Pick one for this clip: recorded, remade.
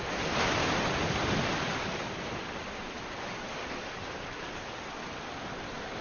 recorded